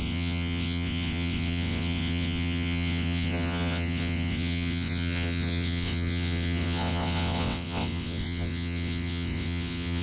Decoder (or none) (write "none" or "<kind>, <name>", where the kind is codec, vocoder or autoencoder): vocoder, WaveNeXt